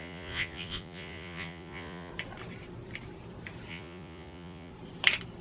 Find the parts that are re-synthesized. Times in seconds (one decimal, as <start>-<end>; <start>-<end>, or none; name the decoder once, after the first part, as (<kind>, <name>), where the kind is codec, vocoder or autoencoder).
0.0-2.1 (vocoder, Vocos); 3.7-4.7